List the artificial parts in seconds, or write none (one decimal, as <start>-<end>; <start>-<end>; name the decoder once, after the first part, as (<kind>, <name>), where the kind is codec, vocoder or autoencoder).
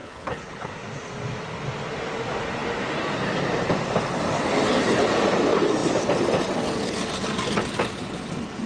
0.0-0.7 (codec, HILCodec)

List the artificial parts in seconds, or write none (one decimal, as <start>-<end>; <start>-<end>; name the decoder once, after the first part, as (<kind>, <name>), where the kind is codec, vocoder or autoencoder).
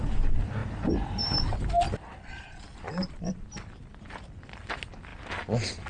none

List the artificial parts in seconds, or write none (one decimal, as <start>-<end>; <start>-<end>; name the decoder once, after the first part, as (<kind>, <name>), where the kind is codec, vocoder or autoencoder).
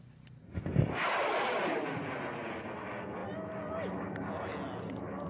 none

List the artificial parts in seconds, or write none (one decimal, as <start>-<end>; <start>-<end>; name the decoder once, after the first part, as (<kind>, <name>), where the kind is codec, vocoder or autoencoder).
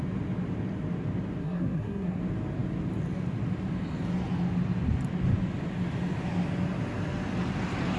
1.4-2.2 (codec, SNAC)